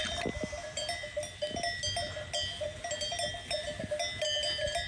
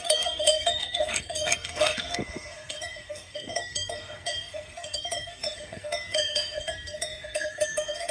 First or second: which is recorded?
first